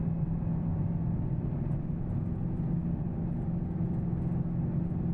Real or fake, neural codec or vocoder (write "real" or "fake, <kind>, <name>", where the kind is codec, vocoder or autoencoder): real